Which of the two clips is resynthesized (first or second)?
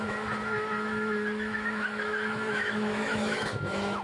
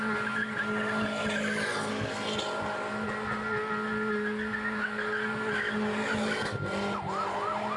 first